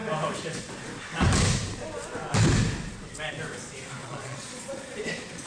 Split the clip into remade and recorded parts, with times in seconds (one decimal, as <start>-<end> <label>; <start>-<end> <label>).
0.0-4.0 recorded; 4.0-5.0 remade; 5.0-5.5 recorded